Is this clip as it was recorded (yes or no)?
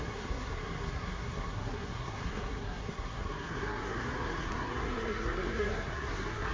no